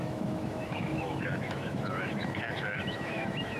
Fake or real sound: fake